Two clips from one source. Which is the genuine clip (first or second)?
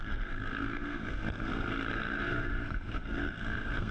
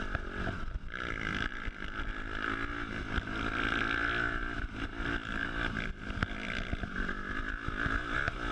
second